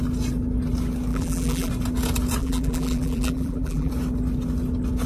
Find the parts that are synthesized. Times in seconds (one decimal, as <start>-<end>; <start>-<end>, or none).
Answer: 1.1-1.7; 2.4-3.9